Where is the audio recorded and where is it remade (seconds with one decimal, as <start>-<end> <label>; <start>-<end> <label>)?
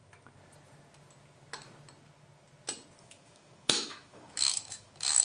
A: 0.0-3.0 recorded; 3.0-5.2 remade